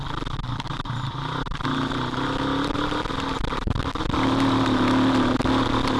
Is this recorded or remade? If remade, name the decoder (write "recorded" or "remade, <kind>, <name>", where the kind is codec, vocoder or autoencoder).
recorded